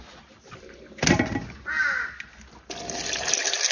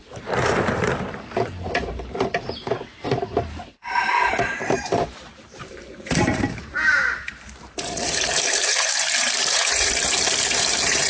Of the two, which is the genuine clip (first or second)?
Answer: first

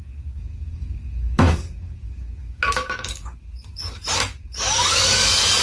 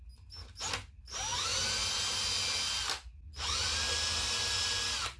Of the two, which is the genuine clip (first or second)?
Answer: second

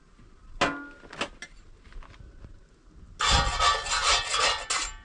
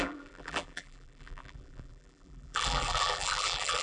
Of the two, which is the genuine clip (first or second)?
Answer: first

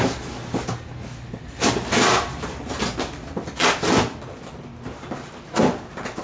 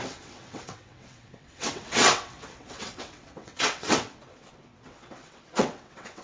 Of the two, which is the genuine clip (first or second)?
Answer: first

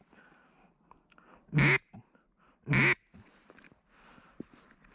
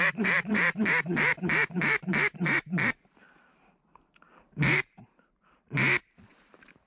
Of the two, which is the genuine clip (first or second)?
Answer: first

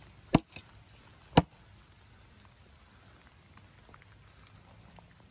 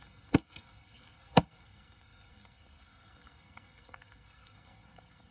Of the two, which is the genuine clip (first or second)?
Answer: first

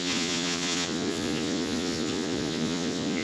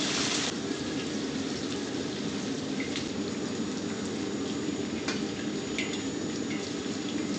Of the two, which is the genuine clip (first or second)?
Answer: second